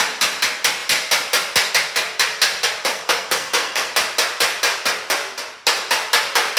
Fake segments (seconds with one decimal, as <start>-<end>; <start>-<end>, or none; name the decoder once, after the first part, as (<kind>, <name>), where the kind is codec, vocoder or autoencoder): 2.9-3.9 (codec, SNAC)